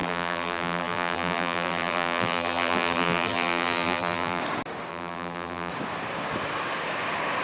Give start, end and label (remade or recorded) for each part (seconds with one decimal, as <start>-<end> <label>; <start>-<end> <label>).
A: 0.0-4.4 remade; 4.4-4.9 recorded; 4.9-5.7 remade; 5.7-7.4 recorded